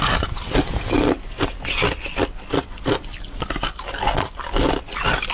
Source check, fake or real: real